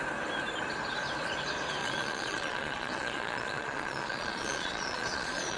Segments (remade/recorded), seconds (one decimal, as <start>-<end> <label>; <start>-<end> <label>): 0.0-1.8 recorded; 1.8-5.6 remade